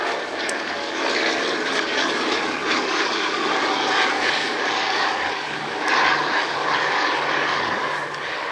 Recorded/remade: remade